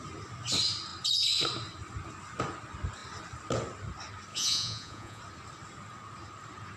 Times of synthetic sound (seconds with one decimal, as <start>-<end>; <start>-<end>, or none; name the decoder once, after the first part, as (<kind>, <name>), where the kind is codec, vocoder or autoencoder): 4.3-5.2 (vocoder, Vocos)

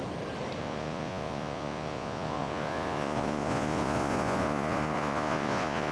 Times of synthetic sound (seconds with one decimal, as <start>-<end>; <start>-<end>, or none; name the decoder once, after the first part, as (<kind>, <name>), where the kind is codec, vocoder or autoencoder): 0.6-5.9 (vocoder, Vocos)

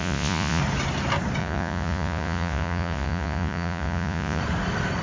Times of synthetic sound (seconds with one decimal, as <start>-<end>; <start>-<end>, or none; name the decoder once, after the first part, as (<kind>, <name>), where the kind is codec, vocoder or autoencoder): 0.0-0.6 (vocoder, Vocos); 1.4-4.4

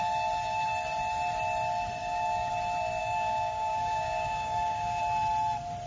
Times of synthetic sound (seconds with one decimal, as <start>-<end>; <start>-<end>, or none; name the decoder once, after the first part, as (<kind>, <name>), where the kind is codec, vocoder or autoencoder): 2.0-2.5 (codec, DAC); 3.0-5.0